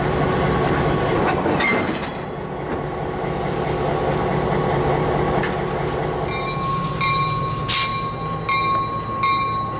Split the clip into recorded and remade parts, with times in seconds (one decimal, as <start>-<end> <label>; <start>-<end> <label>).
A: 0.0-9.8 recorded